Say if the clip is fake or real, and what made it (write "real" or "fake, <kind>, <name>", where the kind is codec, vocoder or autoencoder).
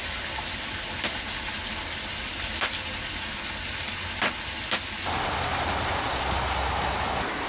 real